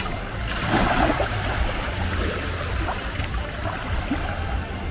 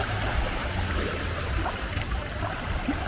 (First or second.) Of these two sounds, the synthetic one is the second